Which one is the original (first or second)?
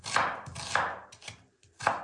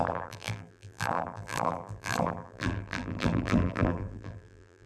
first